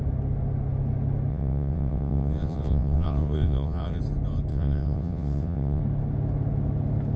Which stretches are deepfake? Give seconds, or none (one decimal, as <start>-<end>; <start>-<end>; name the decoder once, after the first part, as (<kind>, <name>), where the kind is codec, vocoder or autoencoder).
1.3-4.0 (vocoder, WaveNeXt); 4.5-5.8